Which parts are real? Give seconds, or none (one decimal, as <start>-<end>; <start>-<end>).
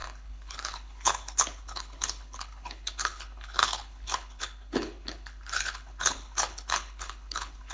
none